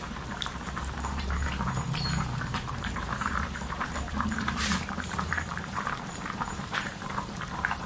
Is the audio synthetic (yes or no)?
yes